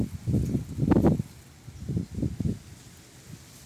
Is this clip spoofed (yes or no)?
no